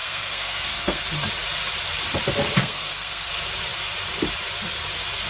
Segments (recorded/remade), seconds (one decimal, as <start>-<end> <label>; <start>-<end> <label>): 0.0-1.0 remade; 1.0-2.6 recorded; 2.6-3.3 remade; 3.3-5.3 recorded